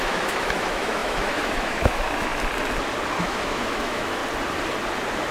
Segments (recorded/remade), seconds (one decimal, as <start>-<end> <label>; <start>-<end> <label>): 0.0-2.3 remade; 2.3-3.2 recorded; 3.2-4.2 remade; 4.2-5.3 recorded